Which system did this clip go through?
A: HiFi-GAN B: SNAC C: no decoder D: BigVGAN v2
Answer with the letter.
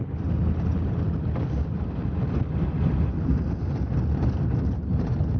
C